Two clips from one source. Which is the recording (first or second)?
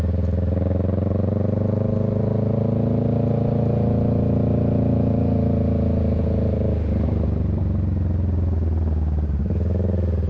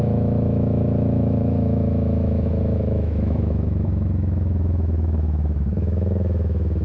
first